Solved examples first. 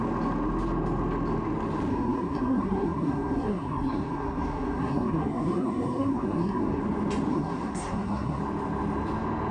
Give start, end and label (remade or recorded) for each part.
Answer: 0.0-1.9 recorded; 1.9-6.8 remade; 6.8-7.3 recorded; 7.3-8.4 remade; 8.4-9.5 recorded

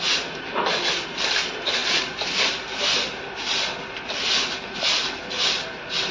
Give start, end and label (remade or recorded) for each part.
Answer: 0.0-6.1 recorded

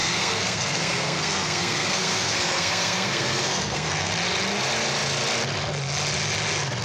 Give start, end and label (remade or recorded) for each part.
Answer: 0.0-4.1 remade; 4.1-6.8 recorded

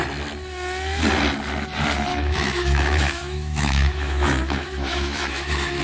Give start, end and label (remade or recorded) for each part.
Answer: 0.0-2.1 recorded; 2.1-5.8 remade